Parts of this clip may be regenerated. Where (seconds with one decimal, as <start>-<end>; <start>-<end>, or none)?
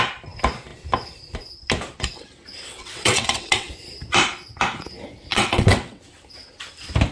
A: 2.7-3.7; 5.3-6.0